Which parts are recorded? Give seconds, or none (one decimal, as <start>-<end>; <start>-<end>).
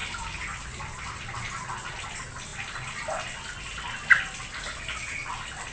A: 0.0-5.7